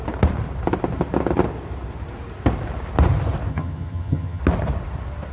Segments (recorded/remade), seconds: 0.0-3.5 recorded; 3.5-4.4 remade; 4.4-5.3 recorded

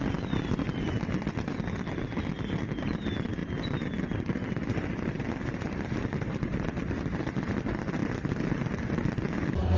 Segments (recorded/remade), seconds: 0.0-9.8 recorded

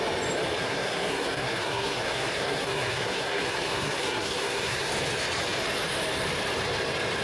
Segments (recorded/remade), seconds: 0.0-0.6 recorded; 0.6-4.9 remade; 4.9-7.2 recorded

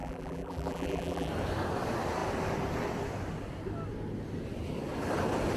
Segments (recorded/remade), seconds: 0.0-1.3 remade; 1.3-5.6 recorded

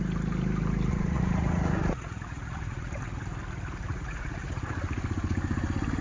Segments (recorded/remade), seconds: 0.0-0.9 recorded; 0.9-3.2 remade; 3.2-3.9 recorded; 3.9-4.6 remade; 4.6-6.0 recorded